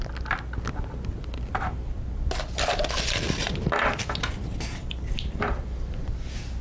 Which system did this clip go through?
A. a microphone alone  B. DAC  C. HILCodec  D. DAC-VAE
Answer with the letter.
A